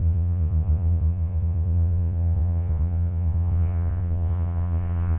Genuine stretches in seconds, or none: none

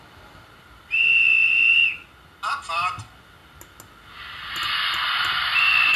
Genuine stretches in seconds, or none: 0.0-6.0

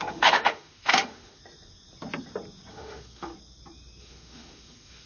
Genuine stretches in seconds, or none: 1.4-2.7; 3.3-4.0

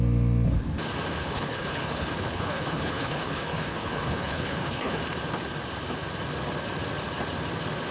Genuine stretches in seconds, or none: 0.0-1.2; 5.0-7.9

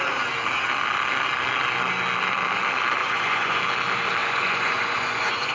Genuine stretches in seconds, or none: 0.0-3.0; 3.6-4.2

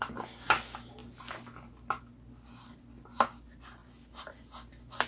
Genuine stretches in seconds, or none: 0.0-5.1

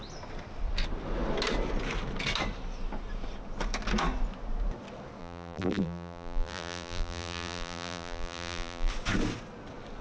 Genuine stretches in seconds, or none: 0.0-5.2; 8.9-10.0